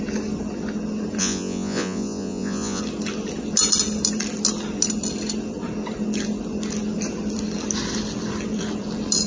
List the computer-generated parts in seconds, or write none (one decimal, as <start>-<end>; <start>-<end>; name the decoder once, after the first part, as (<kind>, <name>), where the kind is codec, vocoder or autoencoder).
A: 1.2-2.8 (vocoder, Vocos)